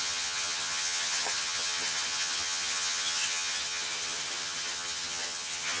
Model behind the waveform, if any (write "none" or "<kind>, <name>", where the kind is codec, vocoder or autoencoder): vocoder, HiFi-GAN